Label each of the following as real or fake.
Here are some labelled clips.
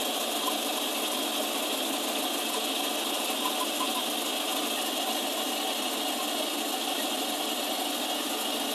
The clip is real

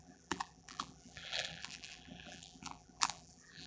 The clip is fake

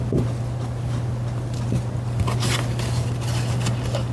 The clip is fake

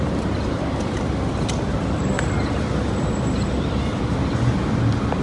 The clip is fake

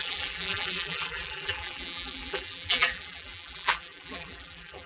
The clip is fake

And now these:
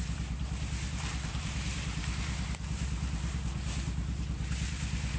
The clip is fake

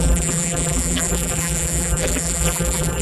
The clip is fake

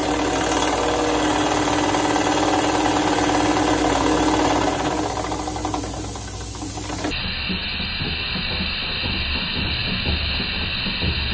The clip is real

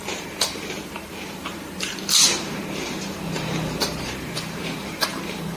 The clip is fake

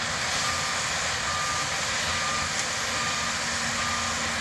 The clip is real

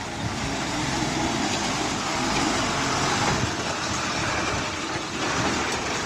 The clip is fake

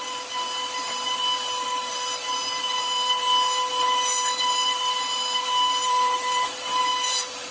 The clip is fake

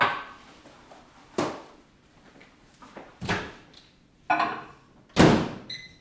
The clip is real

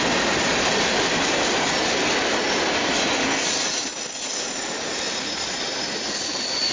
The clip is real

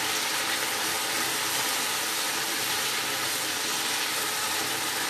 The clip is real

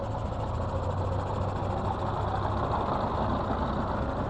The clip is real